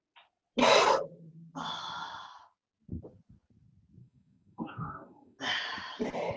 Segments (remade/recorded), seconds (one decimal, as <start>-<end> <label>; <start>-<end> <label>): 0.0-4.0 recorded; 4.0-5.4 remade; 5.4-6.4 recorded